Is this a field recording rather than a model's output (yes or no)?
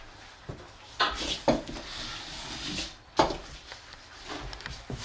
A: yes